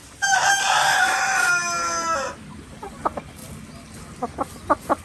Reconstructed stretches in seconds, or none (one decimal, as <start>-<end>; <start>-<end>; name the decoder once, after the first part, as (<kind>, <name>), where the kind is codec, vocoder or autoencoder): 0.0-0.8 (vocoder, BigVGAN v2)